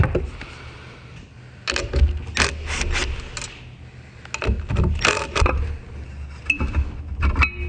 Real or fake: real